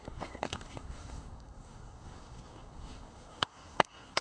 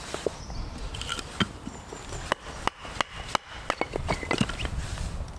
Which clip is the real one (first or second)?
second